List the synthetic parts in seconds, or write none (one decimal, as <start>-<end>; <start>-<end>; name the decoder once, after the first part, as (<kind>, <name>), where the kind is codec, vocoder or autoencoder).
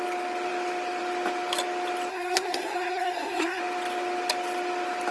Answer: 2.1-3.6 (codec, SNAC)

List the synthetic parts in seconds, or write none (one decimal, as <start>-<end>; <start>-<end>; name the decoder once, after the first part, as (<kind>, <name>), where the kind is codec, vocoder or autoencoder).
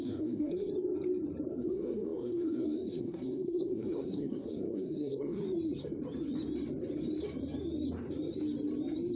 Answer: 0.0-0.7 (codec, SNAC); 1.5-5.4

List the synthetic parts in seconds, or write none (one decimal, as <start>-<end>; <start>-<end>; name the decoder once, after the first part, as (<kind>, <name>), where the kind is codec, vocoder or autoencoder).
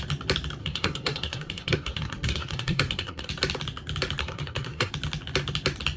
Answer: 0.6-3.3 (codec, SNAC); 4.2-4.9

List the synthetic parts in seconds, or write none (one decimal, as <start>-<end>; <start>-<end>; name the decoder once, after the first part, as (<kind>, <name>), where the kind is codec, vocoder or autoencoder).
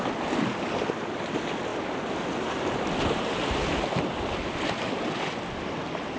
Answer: none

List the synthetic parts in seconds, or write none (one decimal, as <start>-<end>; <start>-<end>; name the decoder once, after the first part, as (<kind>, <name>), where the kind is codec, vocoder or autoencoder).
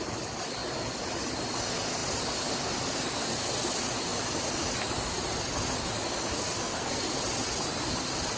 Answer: 6.3-7.1 (codec, SNAC)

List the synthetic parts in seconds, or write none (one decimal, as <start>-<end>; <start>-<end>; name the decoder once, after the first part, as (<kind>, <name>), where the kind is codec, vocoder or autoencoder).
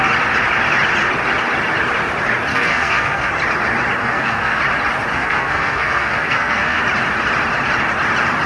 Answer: 2.5-3.3 (codec, SNAC); 4.0-4.6; 5.1-6.8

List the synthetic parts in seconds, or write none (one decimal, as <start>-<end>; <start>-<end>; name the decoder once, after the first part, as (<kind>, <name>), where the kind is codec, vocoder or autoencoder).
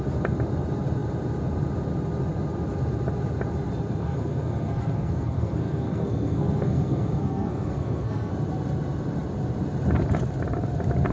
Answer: 4.0-8.3 (codec, SNAC)